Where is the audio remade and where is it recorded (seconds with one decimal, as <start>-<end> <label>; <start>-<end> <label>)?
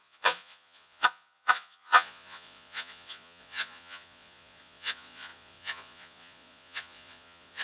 0.0-7.6 remade